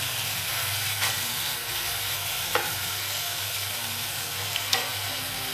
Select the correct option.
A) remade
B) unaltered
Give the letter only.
A